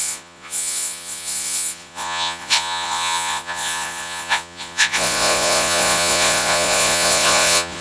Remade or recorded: remade